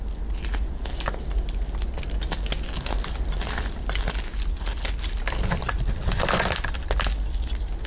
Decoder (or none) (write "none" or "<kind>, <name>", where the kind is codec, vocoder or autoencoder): none